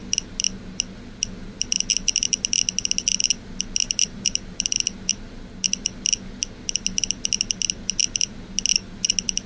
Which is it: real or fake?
real